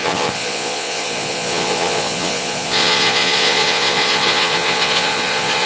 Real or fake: fake